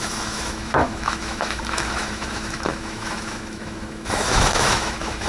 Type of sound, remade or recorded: remade